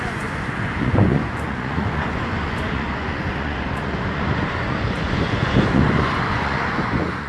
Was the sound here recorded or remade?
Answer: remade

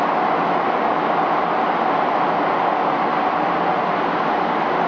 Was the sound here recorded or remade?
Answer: recorded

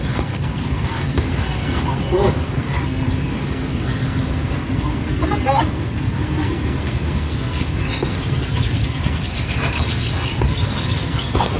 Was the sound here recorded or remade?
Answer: remade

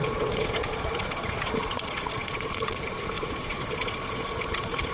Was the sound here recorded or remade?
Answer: remade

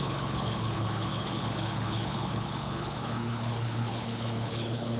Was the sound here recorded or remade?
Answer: remade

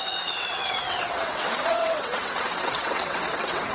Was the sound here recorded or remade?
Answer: remade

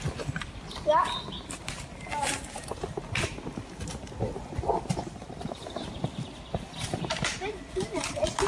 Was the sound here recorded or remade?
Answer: recorded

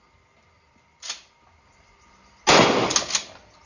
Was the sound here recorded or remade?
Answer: recorded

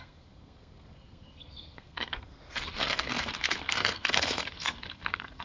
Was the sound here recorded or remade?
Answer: remade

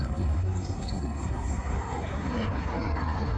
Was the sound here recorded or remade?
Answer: remade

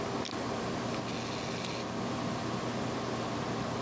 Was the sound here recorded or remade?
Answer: recorded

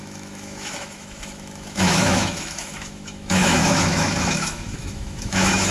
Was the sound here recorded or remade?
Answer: remade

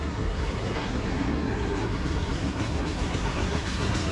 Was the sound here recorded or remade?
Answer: remade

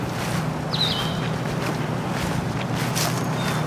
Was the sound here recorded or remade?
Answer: recorded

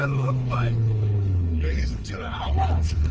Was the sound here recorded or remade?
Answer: remade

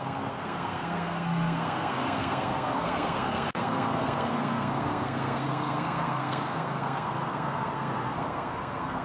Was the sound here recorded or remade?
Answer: remade